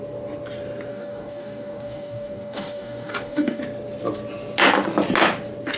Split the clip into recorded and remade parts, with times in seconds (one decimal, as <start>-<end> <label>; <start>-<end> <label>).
0.0-0.9 recorded; 0.9-3.6 remade; 3.6-5.8 recorded

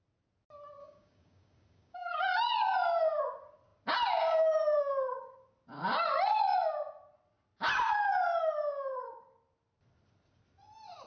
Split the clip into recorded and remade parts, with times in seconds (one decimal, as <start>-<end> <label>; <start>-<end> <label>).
0.0-0.8 recorded; 0.8-2.2 remade; 2.2-11.1 recorded

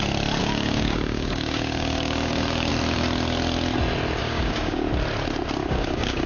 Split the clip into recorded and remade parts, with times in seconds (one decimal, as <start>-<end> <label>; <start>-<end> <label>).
0.0-0.4 recorded; 0.4-2.7 remade; 2.7-4.2 recorded; 4.2-4.9 remade; 4.9-5.6 recorded; 5.6-6.3 remade

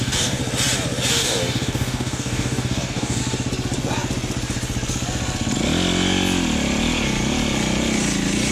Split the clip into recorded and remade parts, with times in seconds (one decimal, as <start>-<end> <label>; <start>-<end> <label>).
0.0-0.4 remade; 0.4-1.1 recorded; 1.1-3.2 remade; 3.2-8.5 recorded

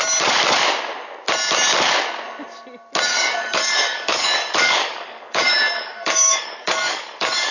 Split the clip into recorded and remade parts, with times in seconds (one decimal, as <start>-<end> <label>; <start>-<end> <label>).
0.0-3.1 recorded; 3.1-7.5 remade